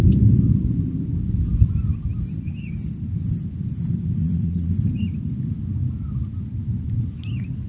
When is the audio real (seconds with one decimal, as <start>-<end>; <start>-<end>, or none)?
0.0-4.2; 4.7-7.7